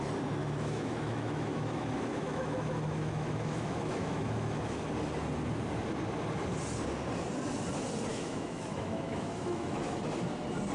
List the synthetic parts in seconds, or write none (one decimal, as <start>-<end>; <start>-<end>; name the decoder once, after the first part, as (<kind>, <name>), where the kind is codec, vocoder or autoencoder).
0.4-4.8 (autoencoder, DAC-VAE); 8.1-10.0